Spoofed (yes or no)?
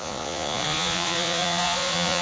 yes